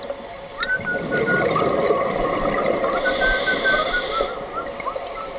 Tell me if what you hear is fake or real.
real